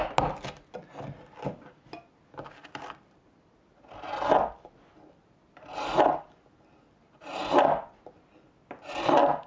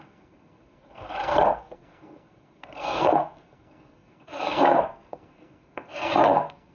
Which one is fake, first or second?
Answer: second